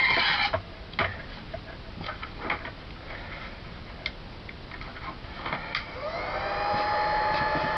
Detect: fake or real real